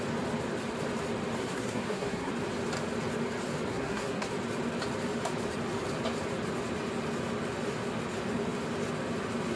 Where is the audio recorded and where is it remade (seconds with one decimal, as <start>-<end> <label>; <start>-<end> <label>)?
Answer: 0.0-1.4 recorded; 1.4-2.3 remade; 2.3-3.7 recorded; 3.7-4.3 remade; 4.3-9.6 recorded

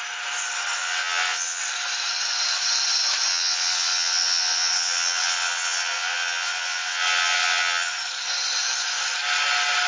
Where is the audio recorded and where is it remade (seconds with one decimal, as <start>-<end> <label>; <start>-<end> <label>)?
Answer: 0.0-0.8 recorded; 0.8-1.6 remade; 1.6-3.3 recorded; 3.3-7.9 remade; 7.9-9.9 recorded

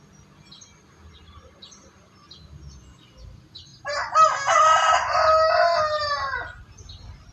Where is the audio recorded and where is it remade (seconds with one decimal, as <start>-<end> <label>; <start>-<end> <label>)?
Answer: 0.0-7.3 recorded

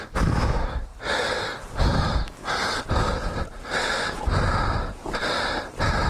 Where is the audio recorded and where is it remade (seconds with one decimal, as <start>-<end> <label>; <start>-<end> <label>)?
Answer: 0.0-0.9 remade; 0.9-2.0 recorded; 2.0-2.4 remade; 2.4-6.1 recorded

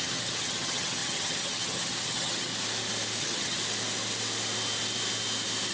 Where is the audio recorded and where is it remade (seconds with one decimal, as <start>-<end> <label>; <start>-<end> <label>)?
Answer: 0.0-2.5 remade; 2.5-3.2 recorded; 3.2-3.6 remade; 3.6-5.7 recorded

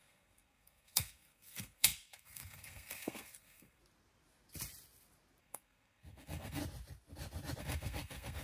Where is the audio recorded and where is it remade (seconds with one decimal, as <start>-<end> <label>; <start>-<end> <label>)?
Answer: 0.0-3.8 remade; 3.8-5.4 recorded; 5.4-6.6 remade; 6.6-7.6 recorded; 7.6-8.4 remade